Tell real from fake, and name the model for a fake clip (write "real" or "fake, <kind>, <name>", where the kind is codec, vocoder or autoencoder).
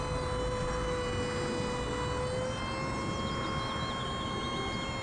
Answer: real